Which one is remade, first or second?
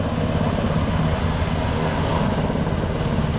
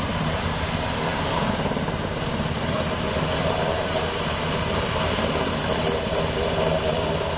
second